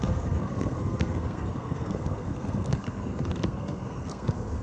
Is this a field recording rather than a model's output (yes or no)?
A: no